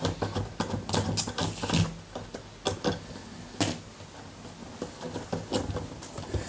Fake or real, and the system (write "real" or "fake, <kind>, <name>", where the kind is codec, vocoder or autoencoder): real